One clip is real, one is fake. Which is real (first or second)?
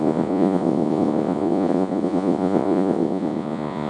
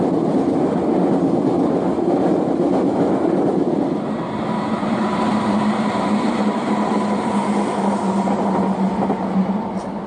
second